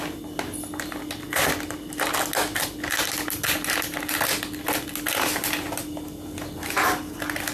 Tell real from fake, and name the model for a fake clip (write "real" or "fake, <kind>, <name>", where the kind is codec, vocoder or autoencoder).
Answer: real